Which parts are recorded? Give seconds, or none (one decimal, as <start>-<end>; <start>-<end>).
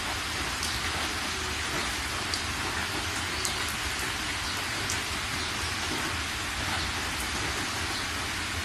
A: 0.0-8.6